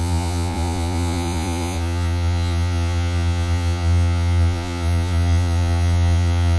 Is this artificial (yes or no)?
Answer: yes